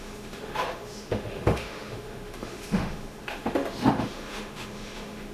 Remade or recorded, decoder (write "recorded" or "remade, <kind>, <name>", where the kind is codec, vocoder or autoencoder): remade, autoencoder, DAC-VAE